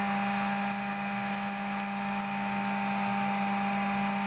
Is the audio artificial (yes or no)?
no